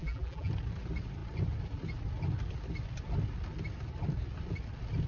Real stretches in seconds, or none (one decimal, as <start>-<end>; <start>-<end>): 0.5-5.1